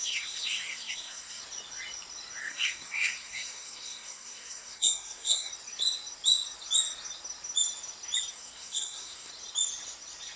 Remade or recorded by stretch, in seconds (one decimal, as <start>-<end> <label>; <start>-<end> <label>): 0.0-1.4 remade; 1.4-2.4 recorded; 2.4-5.5 remade; 5.5-8.3 recorded; 8.3-9.3 remade; 9.3-10.4 recorded